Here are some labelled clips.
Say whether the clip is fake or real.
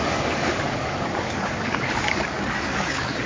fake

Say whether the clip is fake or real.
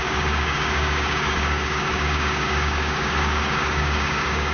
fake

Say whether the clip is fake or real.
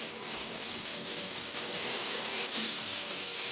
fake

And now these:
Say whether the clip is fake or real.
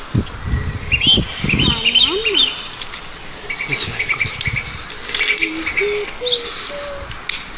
real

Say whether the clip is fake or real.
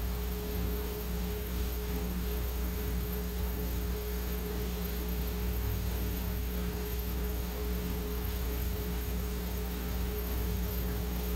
fake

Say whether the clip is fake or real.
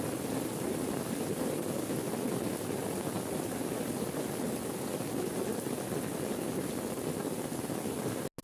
real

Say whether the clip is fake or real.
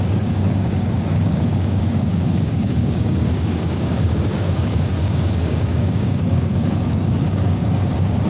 fake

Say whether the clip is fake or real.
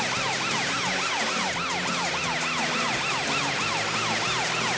real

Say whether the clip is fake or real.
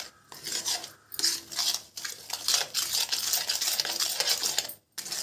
real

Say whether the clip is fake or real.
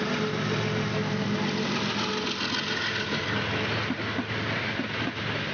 real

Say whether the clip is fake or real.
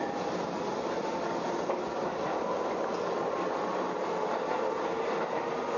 real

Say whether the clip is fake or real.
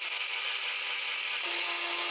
real